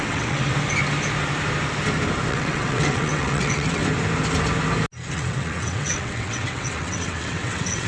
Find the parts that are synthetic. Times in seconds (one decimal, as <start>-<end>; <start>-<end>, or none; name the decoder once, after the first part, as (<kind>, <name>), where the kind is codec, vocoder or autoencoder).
0.0-0.5 (vocoder, WaveNeXt); 2.3-3.8; 5.1-7.9